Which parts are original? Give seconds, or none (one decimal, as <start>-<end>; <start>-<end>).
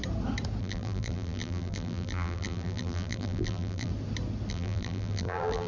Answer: 0.0-0.6; 3.9-4.5